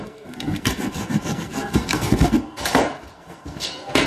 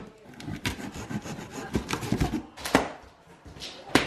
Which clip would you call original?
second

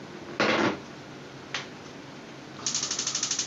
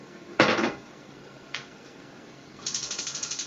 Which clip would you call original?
first